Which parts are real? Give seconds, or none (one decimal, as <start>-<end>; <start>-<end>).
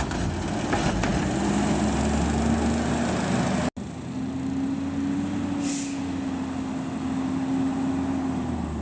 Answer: 0.0-8.8